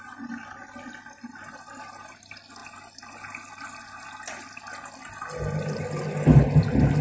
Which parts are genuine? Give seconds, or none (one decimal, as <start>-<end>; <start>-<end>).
0.0-7.0